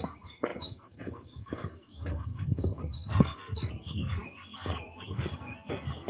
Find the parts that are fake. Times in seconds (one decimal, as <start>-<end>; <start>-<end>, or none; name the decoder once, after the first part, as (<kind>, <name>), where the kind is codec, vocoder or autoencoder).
0.0-6.1 (codec, SNAC)